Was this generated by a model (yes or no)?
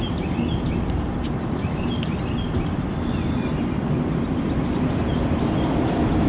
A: no